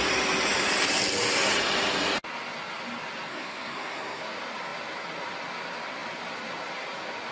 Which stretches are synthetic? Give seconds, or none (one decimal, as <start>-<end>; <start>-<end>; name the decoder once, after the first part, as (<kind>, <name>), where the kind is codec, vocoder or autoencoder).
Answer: 3.3-4.2 (codec, SNAC)